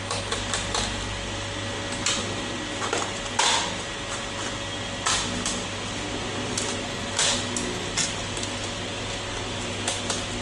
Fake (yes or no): no